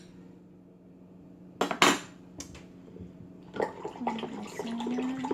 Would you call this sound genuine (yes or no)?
yes